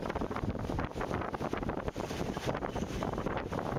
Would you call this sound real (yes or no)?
no